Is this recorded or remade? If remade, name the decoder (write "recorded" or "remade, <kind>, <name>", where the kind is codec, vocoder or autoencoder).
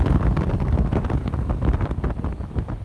recorded